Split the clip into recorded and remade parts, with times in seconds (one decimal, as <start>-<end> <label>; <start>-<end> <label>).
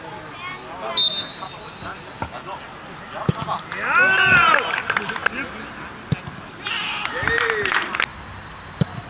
0.0-8.1 recorded; 8.1-9.1 remade